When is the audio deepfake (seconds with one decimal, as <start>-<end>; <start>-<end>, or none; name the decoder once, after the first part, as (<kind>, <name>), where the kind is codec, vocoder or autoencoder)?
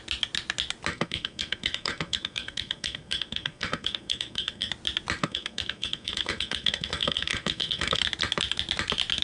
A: 0.9-4.7 (codec, SNAC); 5.2-8.0